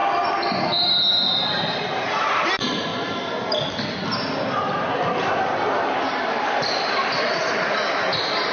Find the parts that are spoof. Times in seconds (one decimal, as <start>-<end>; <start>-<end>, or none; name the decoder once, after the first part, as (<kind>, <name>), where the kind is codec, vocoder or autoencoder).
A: 1.5-2.9 (vocoder, BigVGAN v2); 6.3-8.5